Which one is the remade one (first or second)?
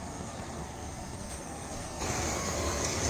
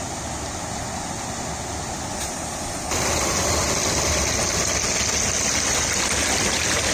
first